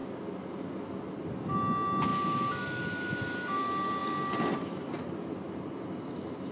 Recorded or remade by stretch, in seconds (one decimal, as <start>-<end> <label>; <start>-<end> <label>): 0.0-6.5 recorded